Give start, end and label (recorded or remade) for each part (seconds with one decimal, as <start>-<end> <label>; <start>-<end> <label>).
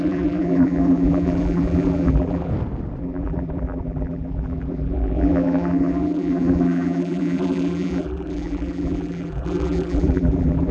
0.0-2.5 remade; 2.5-3.0 recorded; 3.0-10.7 remade